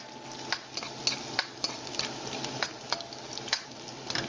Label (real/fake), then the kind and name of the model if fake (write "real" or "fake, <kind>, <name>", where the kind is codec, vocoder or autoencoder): real